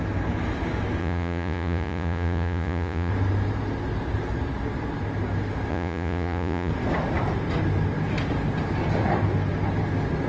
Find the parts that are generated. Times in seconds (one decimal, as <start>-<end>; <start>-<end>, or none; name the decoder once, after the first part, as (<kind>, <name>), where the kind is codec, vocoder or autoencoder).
1.0-3.1 (vocoder, Vocos); 5.7-6.7